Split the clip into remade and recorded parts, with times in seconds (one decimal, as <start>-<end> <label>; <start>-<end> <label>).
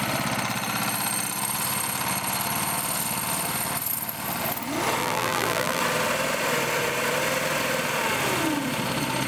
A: 0.0-5.0 recorded; 5.0-5.8 remade; 5.8-9.3 recorded